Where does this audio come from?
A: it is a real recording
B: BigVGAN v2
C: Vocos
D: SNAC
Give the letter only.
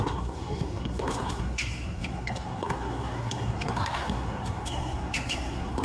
D